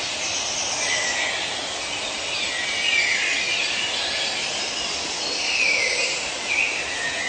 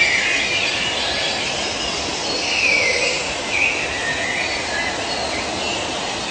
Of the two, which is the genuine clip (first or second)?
second